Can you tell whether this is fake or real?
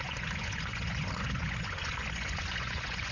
fake